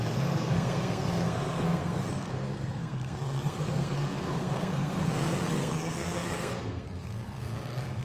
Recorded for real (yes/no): no